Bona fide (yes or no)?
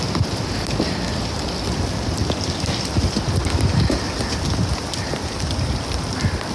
no